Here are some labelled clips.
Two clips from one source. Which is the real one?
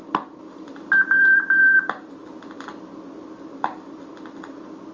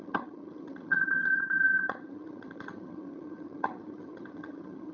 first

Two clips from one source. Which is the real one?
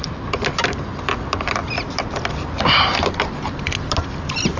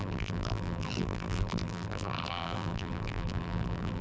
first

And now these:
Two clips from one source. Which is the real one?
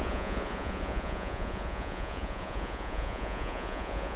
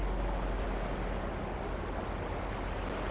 second